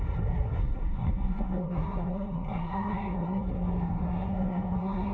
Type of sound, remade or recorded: remade